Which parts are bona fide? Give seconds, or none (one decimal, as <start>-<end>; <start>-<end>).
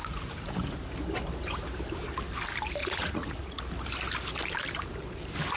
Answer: 0.8-2.8; 3.6-5.6